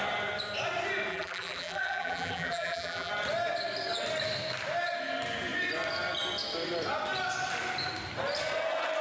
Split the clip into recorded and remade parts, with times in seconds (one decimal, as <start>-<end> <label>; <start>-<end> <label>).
0.0-1.1 recorded; 1.1-3.1 remade; 3.1-9.0 recorded